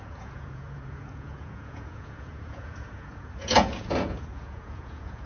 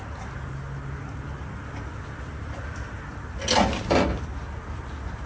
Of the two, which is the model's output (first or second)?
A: first